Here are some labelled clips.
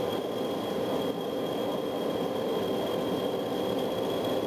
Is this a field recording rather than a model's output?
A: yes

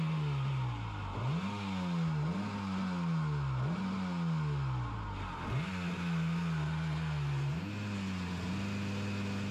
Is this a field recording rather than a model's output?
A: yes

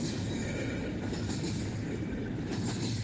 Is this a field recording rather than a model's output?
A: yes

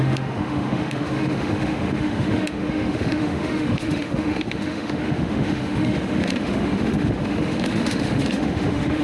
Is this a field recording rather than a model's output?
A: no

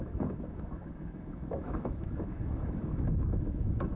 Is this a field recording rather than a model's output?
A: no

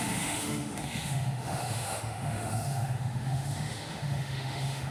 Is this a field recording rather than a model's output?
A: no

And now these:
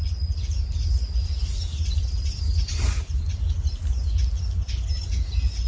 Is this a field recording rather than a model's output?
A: yes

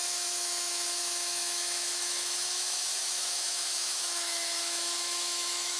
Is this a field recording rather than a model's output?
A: no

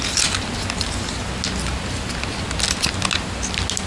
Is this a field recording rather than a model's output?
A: yes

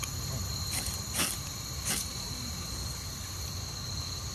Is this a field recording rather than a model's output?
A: yes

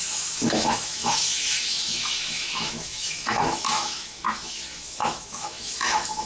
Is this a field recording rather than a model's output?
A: no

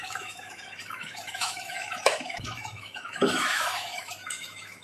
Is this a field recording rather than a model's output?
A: no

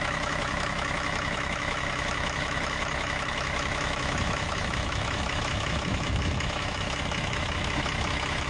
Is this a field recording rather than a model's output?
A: no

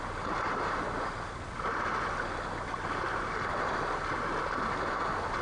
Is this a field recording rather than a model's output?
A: yes